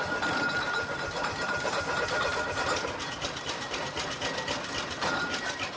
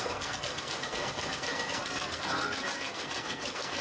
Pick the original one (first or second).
first